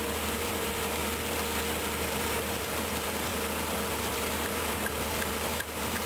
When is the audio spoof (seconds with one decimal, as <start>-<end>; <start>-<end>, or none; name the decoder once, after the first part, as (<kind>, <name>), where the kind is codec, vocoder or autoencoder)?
0.0-1.0 (vocoder, BigVGAN v2); 2.0-3.3; 3.9-6.1